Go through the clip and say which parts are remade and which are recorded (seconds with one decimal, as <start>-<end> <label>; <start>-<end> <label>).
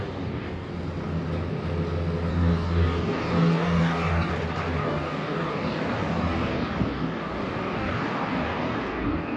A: 0.0-0.7 remade; 0.7-2.3 recorded; 2.3-4.3 remade; 4.3-4.8 recorded; 4.8-9.4 remade